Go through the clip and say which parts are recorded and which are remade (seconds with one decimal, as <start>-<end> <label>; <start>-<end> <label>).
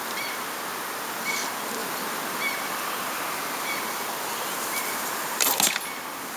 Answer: 0.0-6.4 recorded